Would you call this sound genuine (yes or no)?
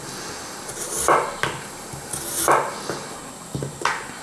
yes